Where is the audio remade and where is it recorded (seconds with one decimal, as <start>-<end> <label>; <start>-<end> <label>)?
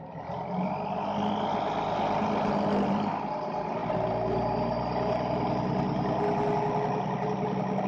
0.0-7.9 recorded